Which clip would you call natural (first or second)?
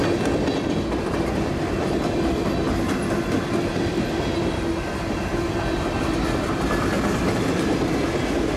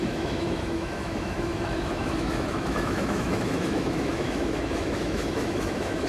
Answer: first